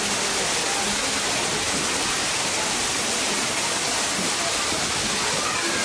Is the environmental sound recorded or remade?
recorded